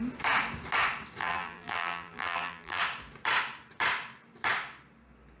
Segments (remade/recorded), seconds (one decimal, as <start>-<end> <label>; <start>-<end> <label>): 0.0-1.2 recorded; 1.2-2.8 remade; 2.8-5.4 recorded